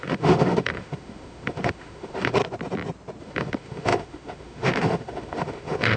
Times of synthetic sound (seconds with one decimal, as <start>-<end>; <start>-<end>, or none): 0.0-2.4; 3.2-6.0